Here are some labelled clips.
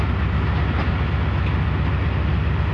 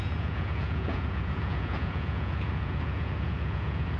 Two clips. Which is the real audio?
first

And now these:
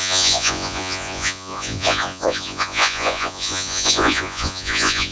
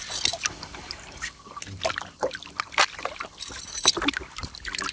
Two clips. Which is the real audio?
second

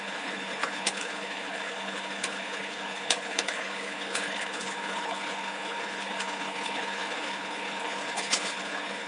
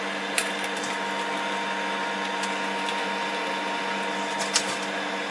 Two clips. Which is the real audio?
second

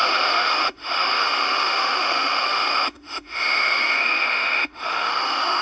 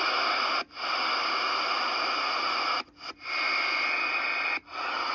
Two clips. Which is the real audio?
second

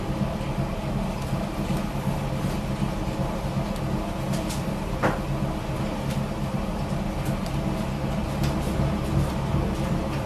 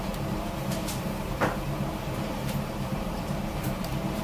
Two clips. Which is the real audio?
first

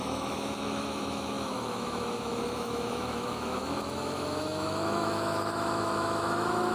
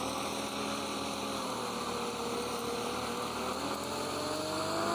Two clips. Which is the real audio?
second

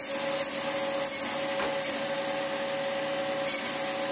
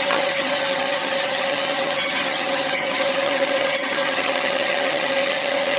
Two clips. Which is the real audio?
first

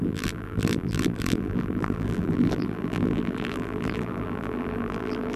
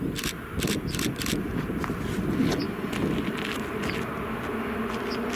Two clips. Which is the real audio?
second